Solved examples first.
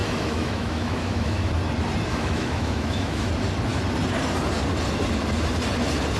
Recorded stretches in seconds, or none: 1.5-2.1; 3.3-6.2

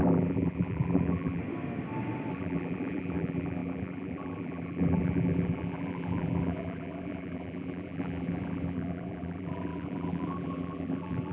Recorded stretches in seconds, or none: 1.4-2.3

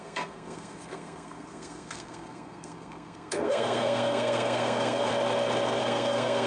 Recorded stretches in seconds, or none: 5.1-5.8

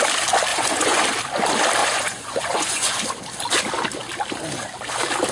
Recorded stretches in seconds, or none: 0.0-0.5; 1.0-1.8; 3.0-5.3

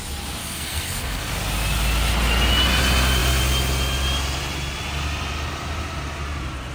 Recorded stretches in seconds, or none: 0.0-0.4; 1.3-6.7

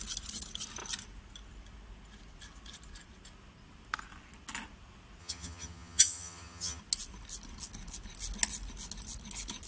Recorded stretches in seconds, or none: 0.0-5.2; 6.8-9.7

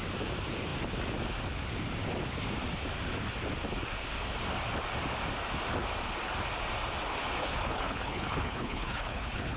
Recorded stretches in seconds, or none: 0.0-7.4

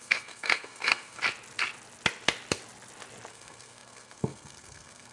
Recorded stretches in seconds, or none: 1.2-3.3